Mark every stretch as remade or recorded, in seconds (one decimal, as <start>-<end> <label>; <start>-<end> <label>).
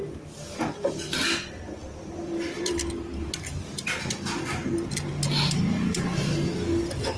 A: 0.0-7.2 recorded